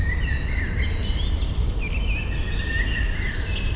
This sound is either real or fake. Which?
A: real